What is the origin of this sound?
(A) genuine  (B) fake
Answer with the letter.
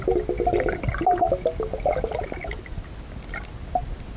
A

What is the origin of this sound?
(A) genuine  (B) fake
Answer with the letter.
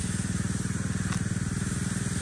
A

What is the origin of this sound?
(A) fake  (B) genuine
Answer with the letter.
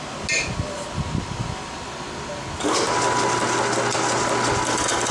B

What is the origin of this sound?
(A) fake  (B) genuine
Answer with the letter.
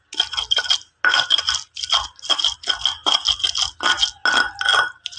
B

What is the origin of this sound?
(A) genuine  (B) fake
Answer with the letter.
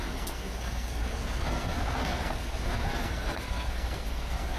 B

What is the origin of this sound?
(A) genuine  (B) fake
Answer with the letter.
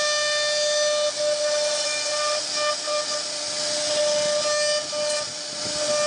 A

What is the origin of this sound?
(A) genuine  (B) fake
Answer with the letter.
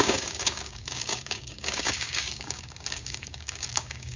B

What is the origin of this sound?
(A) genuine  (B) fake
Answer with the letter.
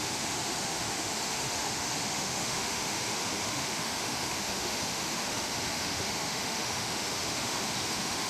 B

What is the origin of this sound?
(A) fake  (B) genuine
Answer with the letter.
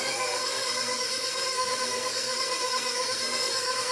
A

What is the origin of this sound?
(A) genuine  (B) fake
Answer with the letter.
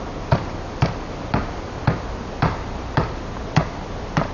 A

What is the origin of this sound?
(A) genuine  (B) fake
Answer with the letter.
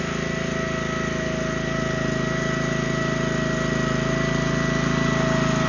A